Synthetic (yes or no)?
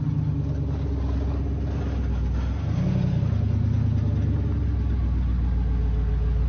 no